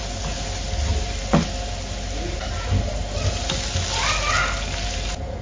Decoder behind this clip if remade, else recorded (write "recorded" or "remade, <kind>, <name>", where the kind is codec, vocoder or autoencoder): recorded